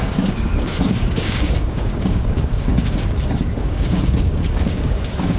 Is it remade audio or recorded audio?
remade